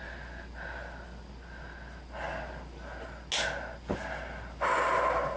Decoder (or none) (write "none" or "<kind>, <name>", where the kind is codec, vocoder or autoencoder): none